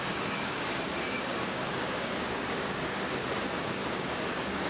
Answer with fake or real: fake